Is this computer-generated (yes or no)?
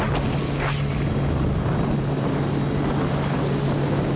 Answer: no